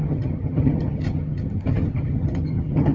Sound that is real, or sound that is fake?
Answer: fake